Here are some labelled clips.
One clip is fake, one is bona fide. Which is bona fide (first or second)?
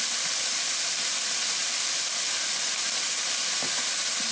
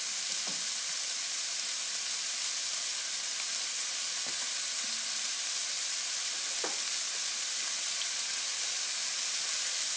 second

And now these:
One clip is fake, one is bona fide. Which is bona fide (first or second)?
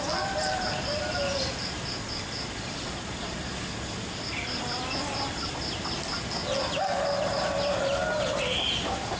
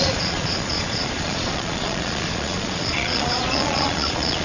first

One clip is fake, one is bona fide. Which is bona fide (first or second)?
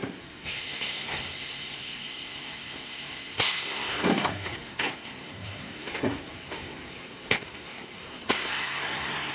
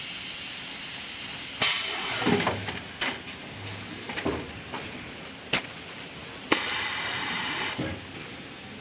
second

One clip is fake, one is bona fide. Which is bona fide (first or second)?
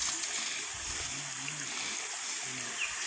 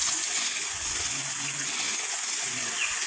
first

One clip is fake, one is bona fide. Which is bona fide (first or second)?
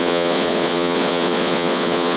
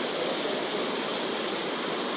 second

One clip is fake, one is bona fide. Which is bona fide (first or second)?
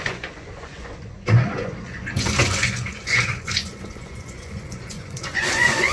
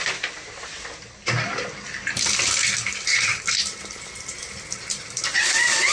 second